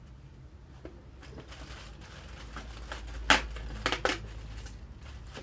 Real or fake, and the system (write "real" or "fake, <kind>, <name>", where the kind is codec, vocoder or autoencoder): real